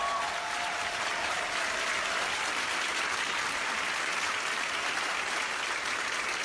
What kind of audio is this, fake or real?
real